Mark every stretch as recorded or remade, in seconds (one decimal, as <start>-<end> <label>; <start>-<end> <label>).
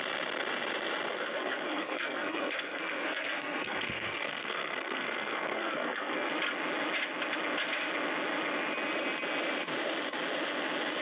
0.0-1.1 recorded; 1.1-6.3 remade; 6.3-11.0 recorded